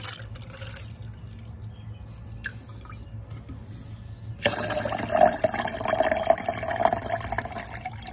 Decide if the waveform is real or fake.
real